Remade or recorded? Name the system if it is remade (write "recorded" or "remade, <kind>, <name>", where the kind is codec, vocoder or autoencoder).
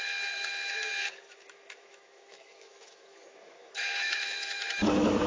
remade, autoencoder, DAC-VAE